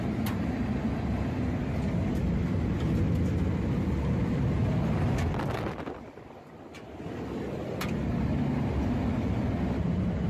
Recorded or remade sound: recorded